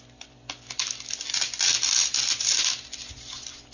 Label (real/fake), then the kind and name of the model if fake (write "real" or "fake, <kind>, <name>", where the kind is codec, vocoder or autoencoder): real